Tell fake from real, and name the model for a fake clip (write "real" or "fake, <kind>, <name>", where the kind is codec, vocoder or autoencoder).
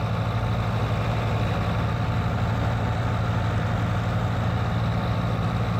real